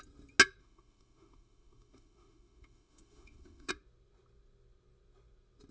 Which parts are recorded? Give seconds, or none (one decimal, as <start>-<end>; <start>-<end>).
0.0-0.6; 3.7-5.7